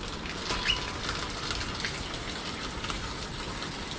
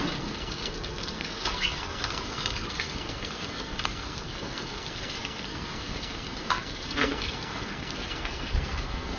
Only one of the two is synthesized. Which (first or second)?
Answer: second